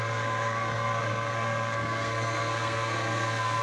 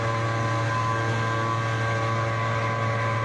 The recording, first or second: second